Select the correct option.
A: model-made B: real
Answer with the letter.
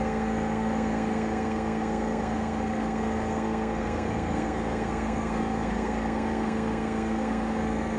A